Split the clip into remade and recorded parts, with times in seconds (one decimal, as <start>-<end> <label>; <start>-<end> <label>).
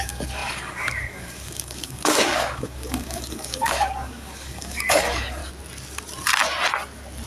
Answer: 0.0-5.4 remade; 5.4-7.3 recorded